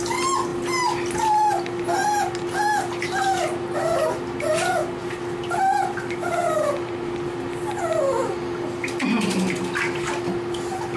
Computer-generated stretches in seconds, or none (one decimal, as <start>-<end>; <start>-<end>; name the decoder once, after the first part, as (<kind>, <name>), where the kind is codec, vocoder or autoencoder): none